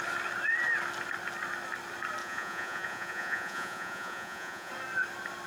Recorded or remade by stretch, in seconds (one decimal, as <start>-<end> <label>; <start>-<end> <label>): 0.0-2.2 recorded; 2.2-4.7 remade; 4.7-5.5 recorded